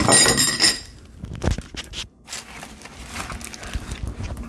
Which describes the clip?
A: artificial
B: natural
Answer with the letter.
B